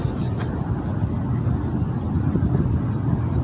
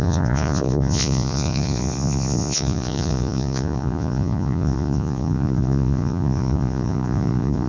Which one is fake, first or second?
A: second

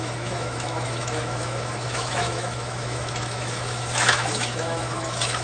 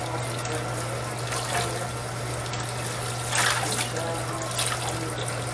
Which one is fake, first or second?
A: first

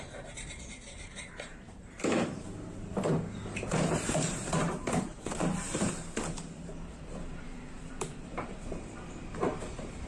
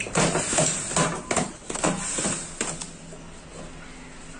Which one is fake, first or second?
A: first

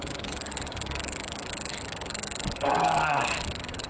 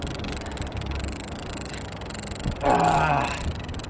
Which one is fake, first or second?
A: first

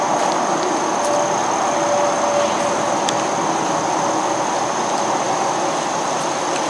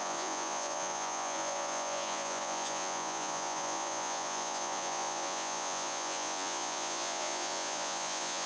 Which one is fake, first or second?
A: second